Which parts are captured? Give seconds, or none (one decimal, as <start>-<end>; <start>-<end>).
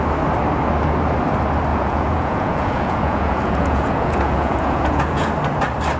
0.0-1.7; 5.3-6.0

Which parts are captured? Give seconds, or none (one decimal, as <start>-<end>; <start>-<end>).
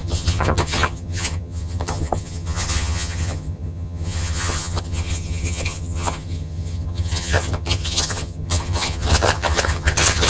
none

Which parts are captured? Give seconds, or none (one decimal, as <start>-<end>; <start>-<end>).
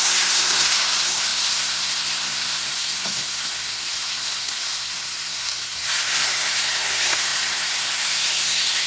none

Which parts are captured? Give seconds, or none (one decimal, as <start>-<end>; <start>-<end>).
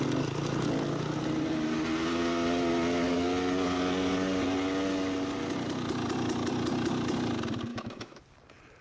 0.0-7.7; 8.2-8.8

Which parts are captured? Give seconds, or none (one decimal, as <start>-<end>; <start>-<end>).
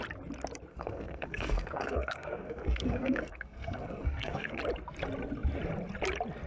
0.0-0.7; 4.6-6.5